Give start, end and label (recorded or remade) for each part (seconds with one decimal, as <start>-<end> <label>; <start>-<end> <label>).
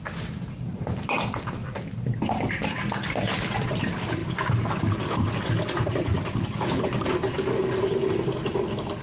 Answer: 0.0-9.0 recorded